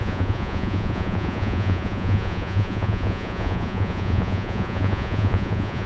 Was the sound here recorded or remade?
remade